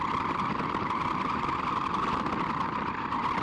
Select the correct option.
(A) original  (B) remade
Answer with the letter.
A